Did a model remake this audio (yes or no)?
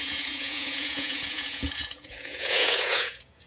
yes